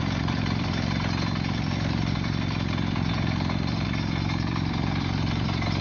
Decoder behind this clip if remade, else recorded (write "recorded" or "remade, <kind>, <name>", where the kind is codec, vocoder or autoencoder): remade, vocoder, BigVGAN v2